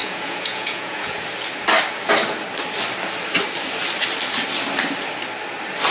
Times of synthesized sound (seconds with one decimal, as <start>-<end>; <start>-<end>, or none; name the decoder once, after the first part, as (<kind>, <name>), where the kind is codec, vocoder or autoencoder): 0.0-1.2 (vocoder, Vocos)